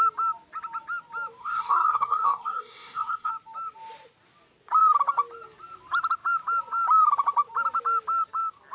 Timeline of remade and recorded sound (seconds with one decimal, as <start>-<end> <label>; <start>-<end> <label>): 0.0-1.4 recorded; 1.4-3.3 remade; 3.3-8.7 recorded

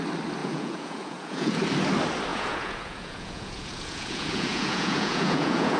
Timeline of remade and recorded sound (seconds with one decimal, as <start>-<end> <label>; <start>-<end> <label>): 0.0-0.4 recorded; 0.4-1.6 remade; 1.6-2.3 recorded; 2.3-5.8 remade

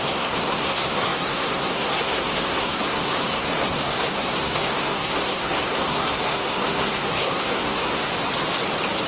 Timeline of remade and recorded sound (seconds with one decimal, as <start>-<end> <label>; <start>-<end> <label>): 0.0-8.1 remade; 8.1-9.1 recorded

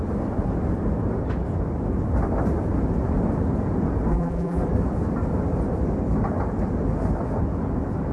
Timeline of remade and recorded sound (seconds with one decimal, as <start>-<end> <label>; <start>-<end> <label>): 0.0-4.1 recorded; 4.1-4.6 remade; 4.6-8.1 recorded

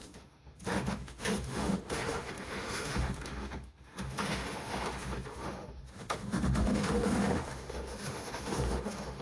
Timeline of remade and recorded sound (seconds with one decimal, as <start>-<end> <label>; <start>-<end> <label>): 0.0-9.2 remade

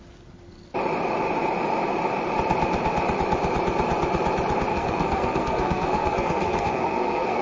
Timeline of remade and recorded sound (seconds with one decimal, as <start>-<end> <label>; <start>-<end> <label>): 0.0-4.7 recorded; 4.7-7.4 remade

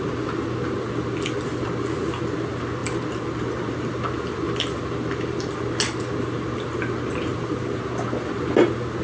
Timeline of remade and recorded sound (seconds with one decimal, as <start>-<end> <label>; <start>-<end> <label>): 0.0-9.0 recorded

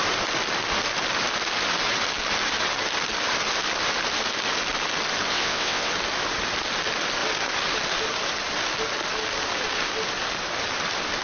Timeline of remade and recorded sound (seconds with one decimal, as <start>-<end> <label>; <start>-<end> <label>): 0.0-5.3 recorded; 5.3-5.9 remade; 5.9-11.2 recorded